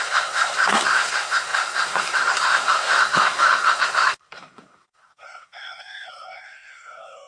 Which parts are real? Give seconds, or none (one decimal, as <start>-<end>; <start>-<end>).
none

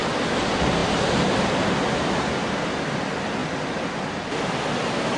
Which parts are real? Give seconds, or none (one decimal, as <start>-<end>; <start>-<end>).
0.0-5.2

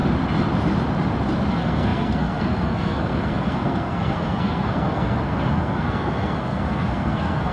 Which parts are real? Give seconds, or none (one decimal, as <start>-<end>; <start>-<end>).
0.0-1.5

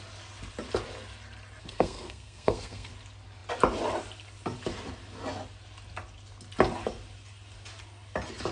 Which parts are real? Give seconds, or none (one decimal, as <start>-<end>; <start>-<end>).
0.0-1.6; 2.9-8.5

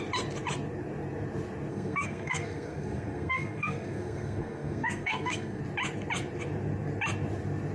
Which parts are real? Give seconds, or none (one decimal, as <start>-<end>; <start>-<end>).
0.0-1.7; 5.6-7.7

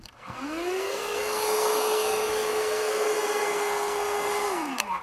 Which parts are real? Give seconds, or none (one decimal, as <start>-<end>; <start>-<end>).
none